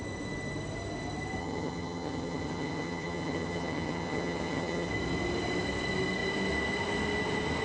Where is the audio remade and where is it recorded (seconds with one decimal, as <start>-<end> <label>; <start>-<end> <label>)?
0.0-1.4 recorded; 1.4-4.9 remade; 4.9-7.6 recorded